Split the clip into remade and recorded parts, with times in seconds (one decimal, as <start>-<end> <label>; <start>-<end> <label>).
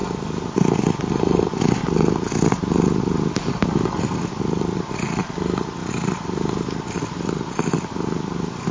0.0-0.8 recorded; 0.8-1.8 remade; 1.8-3.5 recorded; 3.5-8.7 remade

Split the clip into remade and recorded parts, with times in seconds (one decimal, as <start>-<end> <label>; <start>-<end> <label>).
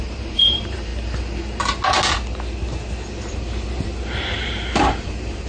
0.0-0.9 remade; 0.9-3.3 recorded; 3.3-5.5 remade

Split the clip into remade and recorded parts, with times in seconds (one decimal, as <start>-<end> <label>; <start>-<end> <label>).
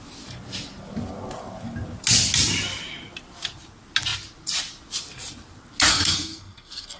0.0-5.9 recorded; 5.9-7.0 remade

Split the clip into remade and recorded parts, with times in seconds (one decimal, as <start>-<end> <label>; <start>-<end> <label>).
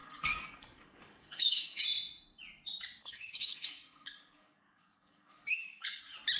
0.0-1.8 remade; 1.8-3.0 recorded; 3.0-6.0 remade; 6.0-6.4 recorded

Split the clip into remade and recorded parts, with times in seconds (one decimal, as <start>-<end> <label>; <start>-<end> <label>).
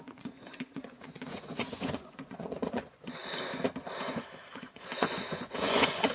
0.0-3.2 remade; 3.2-4.0 recorded; 4.0-6.1 remade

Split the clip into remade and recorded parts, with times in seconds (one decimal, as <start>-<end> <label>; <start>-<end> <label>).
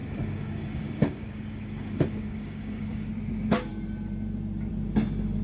0.0-3.1 remade; 3.1-5.4 recorded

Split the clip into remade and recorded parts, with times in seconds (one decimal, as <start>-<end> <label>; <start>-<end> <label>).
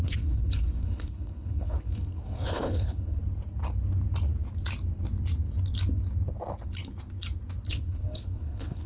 0.0-3.2 remade; 3.2-7.7 recorded; 7.7-8.9 remade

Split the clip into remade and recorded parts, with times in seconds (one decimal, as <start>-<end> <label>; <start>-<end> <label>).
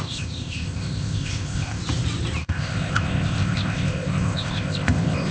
0.0-1.8 remade; 1.8-2.4 recorded; 2.4-5.3 remade